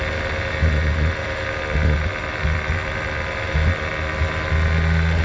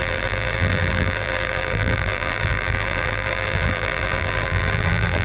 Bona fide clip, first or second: first